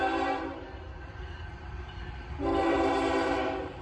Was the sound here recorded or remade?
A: remade